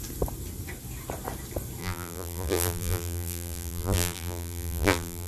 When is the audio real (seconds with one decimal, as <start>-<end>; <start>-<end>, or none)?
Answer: 0.0-1.8